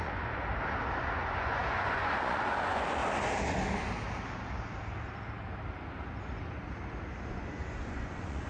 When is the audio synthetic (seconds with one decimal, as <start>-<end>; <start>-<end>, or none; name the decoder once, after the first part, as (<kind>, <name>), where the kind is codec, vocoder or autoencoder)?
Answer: 0.0-0.4 (vocoder, Vocos); 1.0-3.0; 7.3-8.5